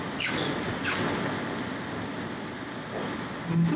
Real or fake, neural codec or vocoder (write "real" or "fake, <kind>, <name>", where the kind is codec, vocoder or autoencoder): real